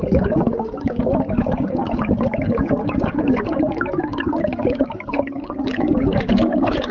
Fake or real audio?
fake